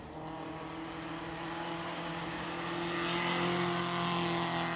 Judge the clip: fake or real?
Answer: real